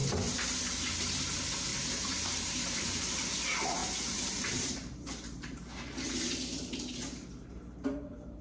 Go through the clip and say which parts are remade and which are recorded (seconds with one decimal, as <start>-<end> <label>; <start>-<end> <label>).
0.0-1.7 recorded; 1.7-3.1 remade; 3.1-3.8 recorded; 3.8-5.4 remade; 5.4-8.4 recorded